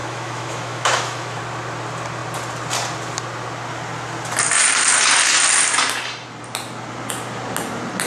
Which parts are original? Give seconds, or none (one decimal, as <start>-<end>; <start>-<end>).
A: 1.4-8.1